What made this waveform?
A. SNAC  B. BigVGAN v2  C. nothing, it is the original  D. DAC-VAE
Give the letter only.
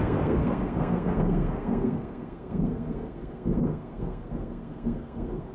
A